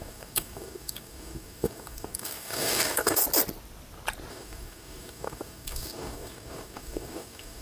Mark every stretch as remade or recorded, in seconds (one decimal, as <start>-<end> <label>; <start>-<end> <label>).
0.0-3.2 remade; 3.2-4.3 recorded; 4.3-7.6 remade